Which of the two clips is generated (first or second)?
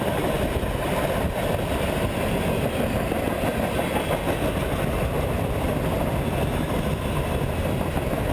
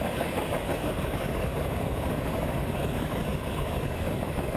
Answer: second